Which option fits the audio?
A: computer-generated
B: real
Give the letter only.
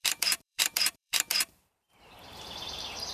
A